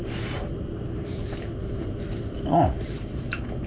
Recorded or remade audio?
remade